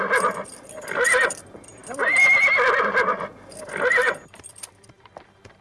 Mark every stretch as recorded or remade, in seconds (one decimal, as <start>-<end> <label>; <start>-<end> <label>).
0.0-3.3 remade; 3.3-3.9 recorded; 3.9-5.6 remade